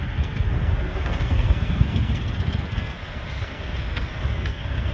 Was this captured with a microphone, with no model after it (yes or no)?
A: no